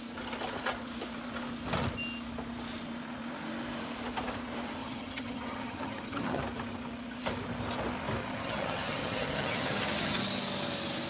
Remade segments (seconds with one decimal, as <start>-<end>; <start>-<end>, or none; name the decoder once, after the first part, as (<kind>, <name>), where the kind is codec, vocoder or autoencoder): 4.8-6.4 (vocoder, HiFi-GAN); 8.2-10.2